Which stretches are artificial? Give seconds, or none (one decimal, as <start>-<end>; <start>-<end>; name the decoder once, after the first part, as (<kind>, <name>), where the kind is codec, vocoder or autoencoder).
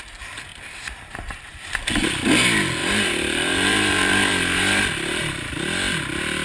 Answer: 0.5-1.5 (vocoder, BigVGAN v2); 2.8-4.8